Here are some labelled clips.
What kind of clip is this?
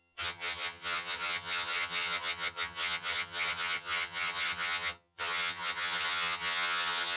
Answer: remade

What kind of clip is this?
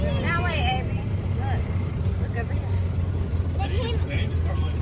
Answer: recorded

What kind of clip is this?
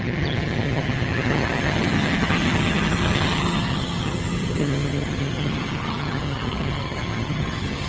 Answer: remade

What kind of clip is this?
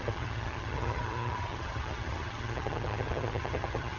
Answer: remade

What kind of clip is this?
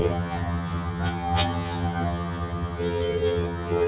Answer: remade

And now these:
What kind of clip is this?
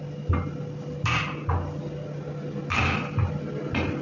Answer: recorded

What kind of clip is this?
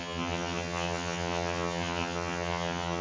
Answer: remade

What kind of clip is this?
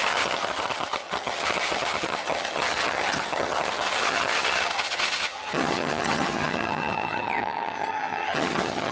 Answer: remade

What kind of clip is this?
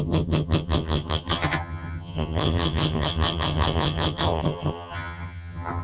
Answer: remade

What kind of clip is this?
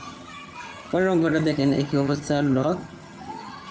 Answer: remade